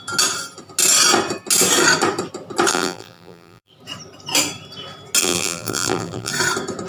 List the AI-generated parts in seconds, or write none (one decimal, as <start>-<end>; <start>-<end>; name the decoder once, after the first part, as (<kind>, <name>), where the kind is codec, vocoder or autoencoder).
2.7-3.7 (vocoder, BigVGAN v2); 5.2-6.3